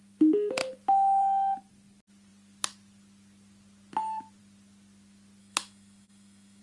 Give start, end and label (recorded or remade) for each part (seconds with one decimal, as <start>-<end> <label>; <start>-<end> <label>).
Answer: 0.0-5.4 recorded; 5.4-6.6 remade